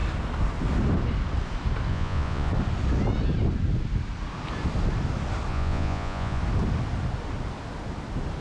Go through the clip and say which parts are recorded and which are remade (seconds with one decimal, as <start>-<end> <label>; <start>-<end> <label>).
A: 0.0-1.9 recorded; 1.9-2.5 remade; 2.5-5.5 recorded; 5.5-6.4 remade; 6.4-8.4 recorded